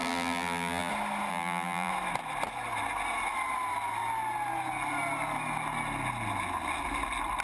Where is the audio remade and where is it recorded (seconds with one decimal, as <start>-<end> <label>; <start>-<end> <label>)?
0.0-0.9 remade; 0.9-1.3 recorded; 1.3-1.9 remade; 1.9-7.4 recorded